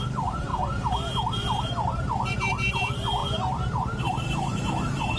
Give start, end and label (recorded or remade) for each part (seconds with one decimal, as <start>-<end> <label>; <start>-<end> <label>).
0.0-0.5 remade; 0.5-1.6 recorded; 1.6-5.2 remade